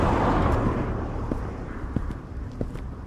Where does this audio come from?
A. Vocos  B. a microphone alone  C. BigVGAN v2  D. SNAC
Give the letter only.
C